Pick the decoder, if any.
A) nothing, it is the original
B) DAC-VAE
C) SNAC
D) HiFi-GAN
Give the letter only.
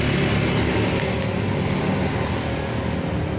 A